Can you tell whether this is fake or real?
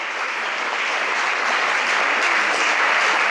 real